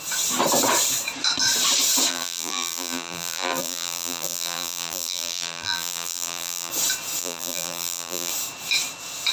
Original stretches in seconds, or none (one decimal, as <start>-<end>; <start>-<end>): 0.0-2.1; 6.7-7.2; 8.3-9.3